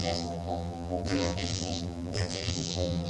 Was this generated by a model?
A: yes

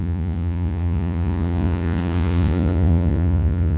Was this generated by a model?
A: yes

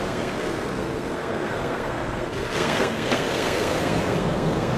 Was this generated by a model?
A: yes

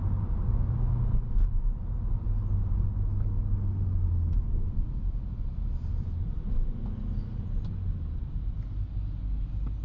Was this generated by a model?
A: no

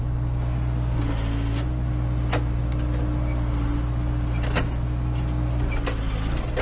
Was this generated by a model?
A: no